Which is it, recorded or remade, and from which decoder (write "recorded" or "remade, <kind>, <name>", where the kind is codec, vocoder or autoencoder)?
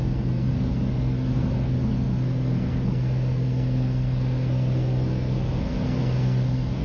remade, codec, SNAC